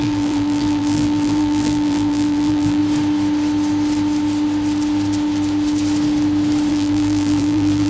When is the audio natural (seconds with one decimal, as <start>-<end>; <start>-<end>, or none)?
2.8-6.7

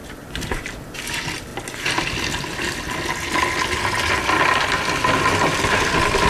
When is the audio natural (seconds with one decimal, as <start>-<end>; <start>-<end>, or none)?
1.0-6.3

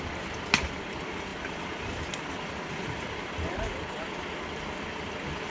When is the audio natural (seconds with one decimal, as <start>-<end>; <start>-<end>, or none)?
0.0-5.5

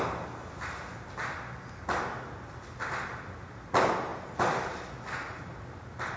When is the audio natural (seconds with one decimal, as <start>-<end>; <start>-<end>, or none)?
0.0-6.2